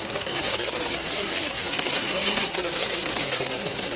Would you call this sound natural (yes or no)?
no